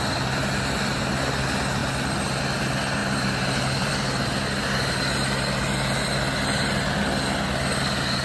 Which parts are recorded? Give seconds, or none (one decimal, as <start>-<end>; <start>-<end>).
0.0-3.0; 3.9-8.2